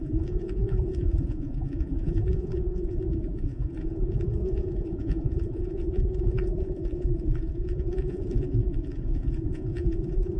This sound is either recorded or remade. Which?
remade